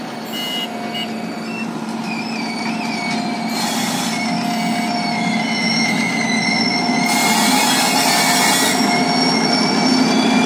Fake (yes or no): no